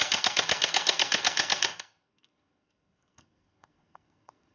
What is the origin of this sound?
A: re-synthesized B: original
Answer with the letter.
A